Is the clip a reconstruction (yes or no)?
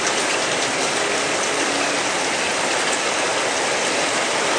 no